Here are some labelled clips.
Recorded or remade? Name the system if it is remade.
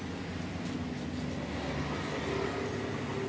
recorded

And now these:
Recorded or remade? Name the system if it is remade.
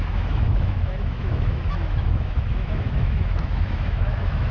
remade, autoencoder, DAC-VAE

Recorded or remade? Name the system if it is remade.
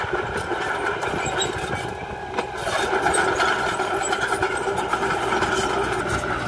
recorded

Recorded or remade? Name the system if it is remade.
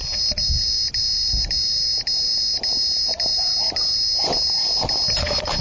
recorded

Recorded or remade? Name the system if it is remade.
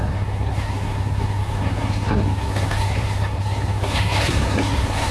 remade, codec, SNAC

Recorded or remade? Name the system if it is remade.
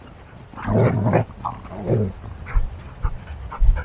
recorded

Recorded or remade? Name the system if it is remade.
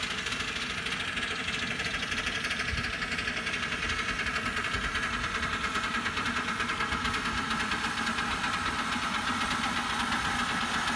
recorded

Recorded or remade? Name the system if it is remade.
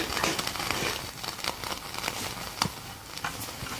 recorded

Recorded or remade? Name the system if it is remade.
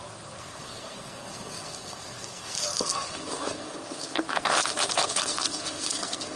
remade, codec, SNAC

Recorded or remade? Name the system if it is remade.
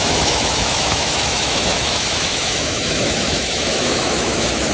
remade, autoencoder, DAC-VAE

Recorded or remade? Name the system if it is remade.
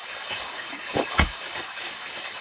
remade, codec, DAC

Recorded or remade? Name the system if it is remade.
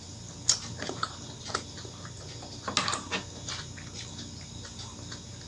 recorded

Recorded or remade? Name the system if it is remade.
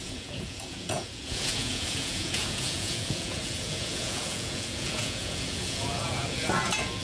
remade, vocoder, Vocos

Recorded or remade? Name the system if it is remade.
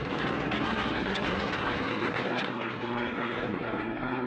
remade, codec, SNAC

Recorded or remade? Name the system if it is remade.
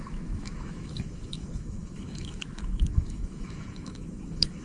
remade, autoencoder, DAC-VAE